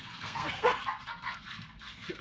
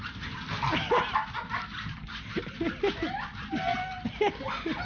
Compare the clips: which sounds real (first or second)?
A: second